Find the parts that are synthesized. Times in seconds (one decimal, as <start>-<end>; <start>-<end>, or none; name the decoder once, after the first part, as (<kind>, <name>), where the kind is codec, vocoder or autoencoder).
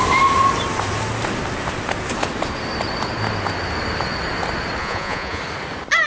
4.8-5.4 (vocoder, Vocos)